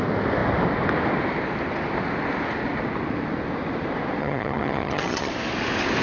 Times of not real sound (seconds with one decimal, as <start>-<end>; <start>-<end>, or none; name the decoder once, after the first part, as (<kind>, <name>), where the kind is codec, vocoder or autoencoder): 4.2-5.3 (vocoder, HiFi-GAN)